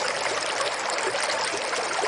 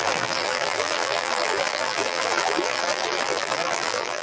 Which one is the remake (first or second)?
second